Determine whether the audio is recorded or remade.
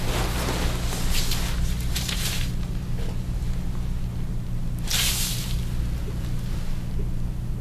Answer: recorded